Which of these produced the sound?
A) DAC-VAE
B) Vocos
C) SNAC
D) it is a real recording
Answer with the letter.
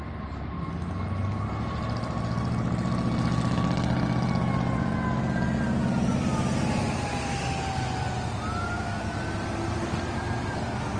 D